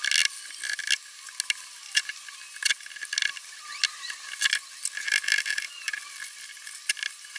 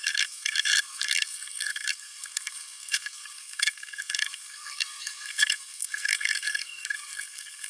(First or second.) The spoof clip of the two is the second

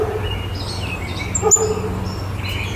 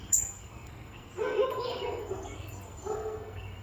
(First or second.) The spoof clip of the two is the second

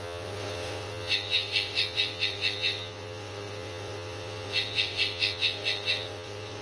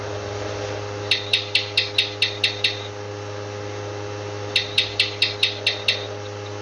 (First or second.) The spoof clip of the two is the first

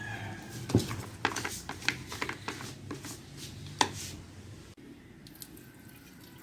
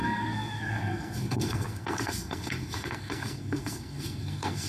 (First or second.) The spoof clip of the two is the second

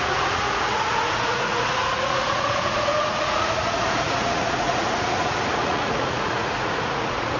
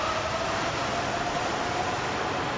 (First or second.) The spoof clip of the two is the first